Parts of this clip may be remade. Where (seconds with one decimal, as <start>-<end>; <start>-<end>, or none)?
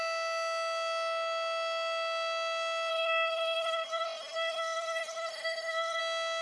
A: 2.9-6.0